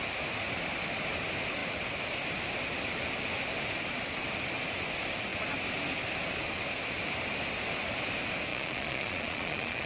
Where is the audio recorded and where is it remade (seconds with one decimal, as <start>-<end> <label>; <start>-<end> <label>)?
0.0-8.5 recorded; 8.5-9.9 remade